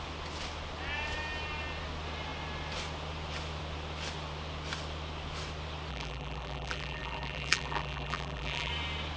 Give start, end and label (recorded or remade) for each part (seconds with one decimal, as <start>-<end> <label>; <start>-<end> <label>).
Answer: 0.0-5.9 recorded; 5.9-8.7 remade; 8.7-9.2 recorded